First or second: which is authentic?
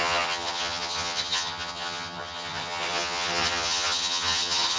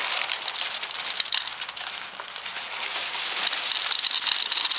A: second